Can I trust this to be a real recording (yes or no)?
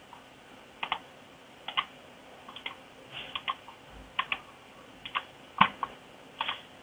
yes